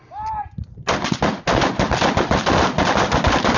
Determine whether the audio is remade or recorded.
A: recorded